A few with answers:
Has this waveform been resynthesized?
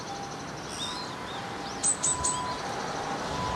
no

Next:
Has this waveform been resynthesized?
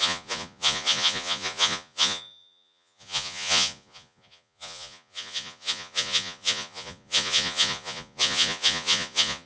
yes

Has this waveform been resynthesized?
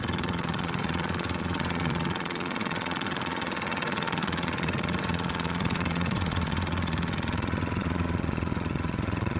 yes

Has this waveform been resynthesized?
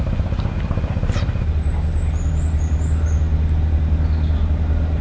no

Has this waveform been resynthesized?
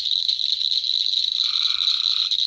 no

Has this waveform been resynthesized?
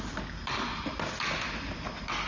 no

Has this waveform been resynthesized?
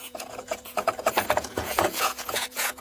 yes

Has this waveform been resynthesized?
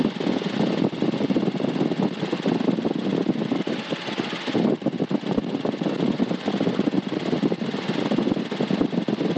no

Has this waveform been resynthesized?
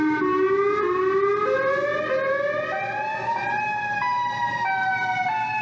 no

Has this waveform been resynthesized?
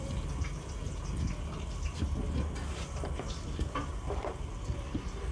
no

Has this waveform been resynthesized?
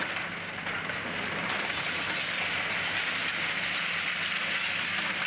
no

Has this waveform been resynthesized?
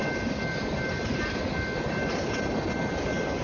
no